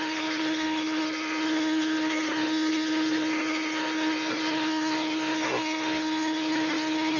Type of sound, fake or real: fake